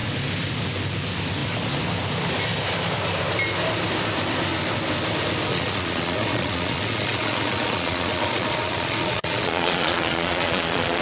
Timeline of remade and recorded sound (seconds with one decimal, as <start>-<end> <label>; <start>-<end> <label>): 0.0-5.5 recorded; 5.5-11.0 remade